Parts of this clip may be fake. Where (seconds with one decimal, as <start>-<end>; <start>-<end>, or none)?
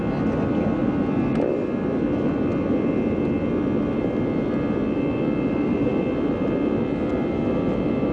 none